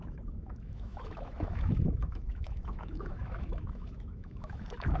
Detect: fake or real fake